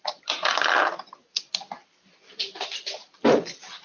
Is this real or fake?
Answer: real